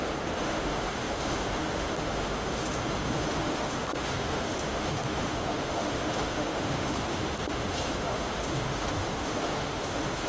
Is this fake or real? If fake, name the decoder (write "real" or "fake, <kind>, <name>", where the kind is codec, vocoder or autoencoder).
fake, autoencoder, DAC-VAE